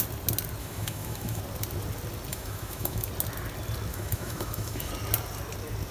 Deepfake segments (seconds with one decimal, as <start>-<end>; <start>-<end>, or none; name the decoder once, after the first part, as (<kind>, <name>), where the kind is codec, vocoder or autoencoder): 0.6-1.4 (autoencoder, DAC-VAE); 2.3-3.1; 3.9-4.9